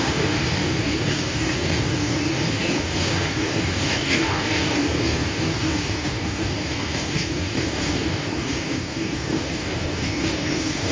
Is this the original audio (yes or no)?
no